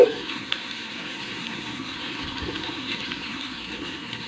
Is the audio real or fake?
fake